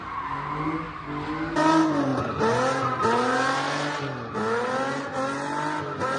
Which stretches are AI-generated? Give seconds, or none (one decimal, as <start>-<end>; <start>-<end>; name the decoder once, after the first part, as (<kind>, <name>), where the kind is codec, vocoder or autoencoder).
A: none